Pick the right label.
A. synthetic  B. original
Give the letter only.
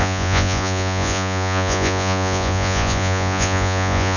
A